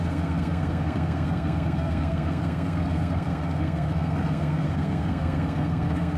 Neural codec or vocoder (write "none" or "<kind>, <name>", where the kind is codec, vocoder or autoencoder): codec, SNAC